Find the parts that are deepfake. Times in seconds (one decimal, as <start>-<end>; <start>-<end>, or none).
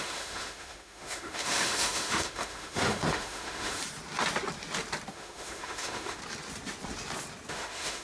0.0-3.8; 5.1-6.2; 7.5-8.0